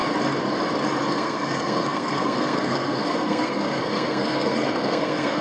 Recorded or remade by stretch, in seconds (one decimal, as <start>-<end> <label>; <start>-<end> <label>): 0.0-1.1 recorded; 1.1-5.4 remade